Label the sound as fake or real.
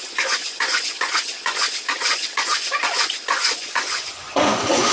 fake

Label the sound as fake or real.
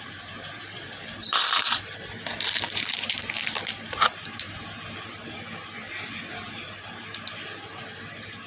fake